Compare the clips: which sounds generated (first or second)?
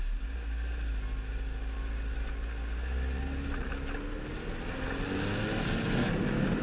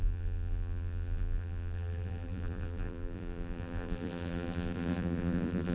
second